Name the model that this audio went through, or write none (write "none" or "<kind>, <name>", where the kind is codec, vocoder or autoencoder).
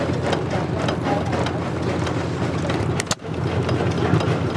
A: none